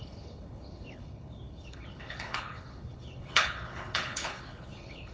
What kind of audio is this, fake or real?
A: fake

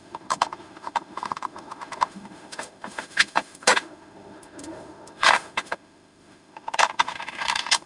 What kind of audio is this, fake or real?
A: fake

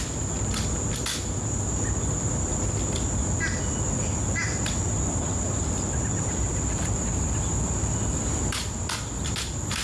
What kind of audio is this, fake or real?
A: real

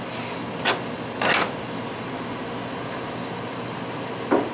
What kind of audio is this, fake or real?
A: real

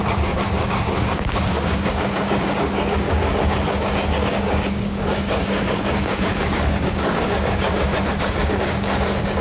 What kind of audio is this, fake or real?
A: fake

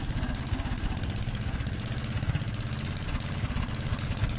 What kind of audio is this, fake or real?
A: real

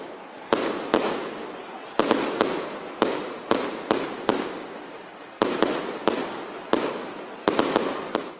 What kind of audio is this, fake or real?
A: real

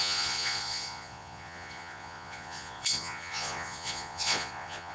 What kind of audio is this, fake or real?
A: fake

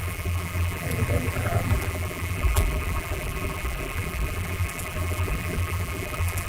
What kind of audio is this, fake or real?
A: fake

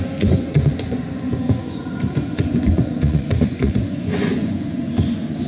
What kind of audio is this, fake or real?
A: fake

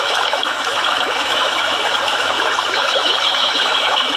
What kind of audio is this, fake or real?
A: fake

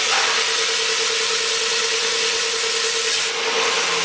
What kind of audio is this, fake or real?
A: real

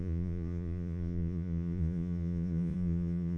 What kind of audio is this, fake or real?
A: fake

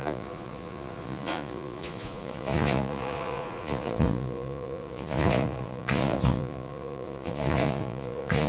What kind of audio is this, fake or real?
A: fake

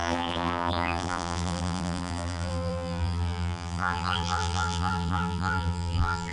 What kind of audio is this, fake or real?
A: fake